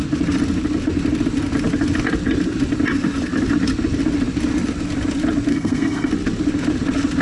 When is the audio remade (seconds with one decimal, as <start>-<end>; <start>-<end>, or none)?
5.5-6.1